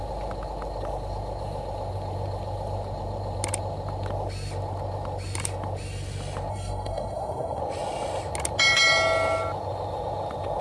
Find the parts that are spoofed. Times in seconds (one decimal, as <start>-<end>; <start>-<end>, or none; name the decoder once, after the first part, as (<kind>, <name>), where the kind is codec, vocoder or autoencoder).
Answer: 6.5-7.6 (codec, SNAC)